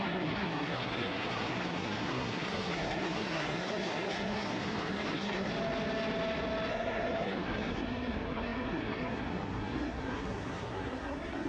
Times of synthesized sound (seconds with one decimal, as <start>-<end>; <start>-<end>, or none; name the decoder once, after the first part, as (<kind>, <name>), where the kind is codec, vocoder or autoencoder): 0.0-5.5 (codec, SNAC); 6.7-11.5